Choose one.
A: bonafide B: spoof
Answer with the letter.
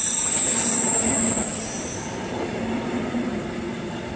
A